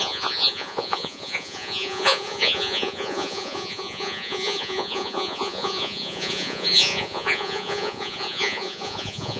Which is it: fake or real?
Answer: fake